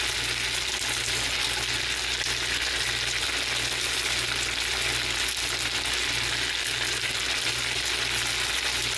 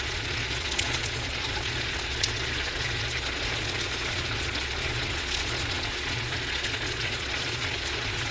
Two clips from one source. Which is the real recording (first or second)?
first